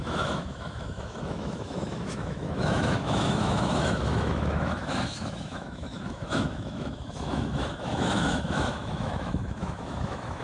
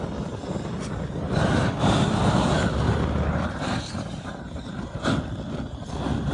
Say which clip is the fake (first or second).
first